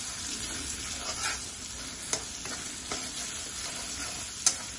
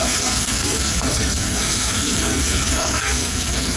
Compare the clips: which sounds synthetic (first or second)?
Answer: second